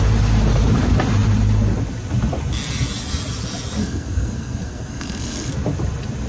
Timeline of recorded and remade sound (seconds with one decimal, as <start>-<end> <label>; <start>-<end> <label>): 0.0-3.8 recorded; 3.8-5.5 remade; 5.5-6.3 recorded